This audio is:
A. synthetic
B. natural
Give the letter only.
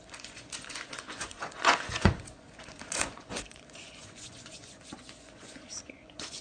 A